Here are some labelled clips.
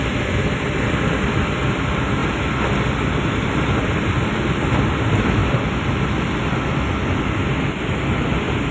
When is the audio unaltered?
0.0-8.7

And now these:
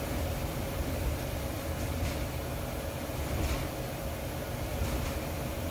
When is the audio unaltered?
none